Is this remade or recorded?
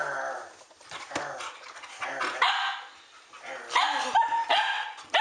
recorded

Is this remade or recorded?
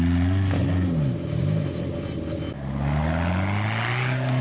recorded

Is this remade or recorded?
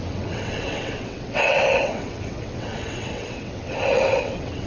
remade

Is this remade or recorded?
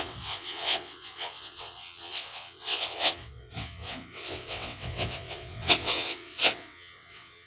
remade